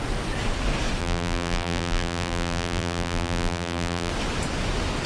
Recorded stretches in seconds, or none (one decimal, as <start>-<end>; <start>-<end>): 0.0-1.0; 4.1-5.1